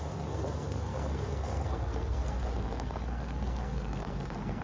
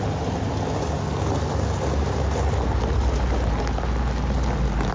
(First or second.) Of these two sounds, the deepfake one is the first